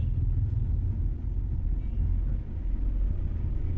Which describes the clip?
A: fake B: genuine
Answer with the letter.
B